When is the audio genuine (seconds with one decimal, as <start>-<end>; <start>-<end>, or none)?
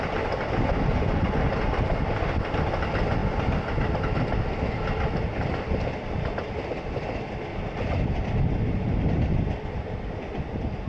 0.0-0.9; 1.5-10.9